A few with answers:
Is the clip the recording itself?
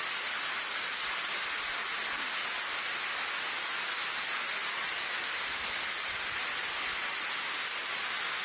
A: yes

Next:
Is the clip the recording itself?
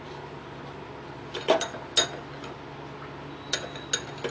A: yes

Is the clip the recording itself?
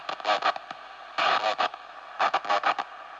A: yes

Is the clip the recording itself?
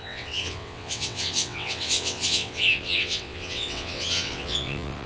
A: no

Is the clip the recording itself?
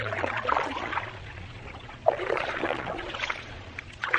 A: no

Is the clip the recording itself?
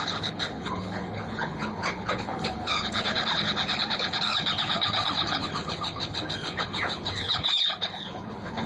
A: no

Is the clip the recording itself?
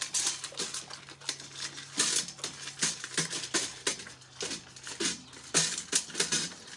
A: yes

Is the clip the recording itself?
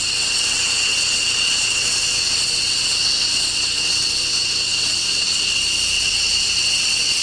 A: no